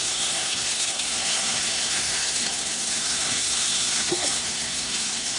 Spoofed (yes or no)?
yes